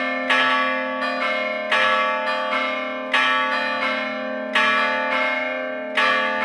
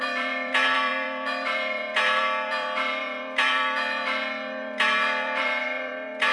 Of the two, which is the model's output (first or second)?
second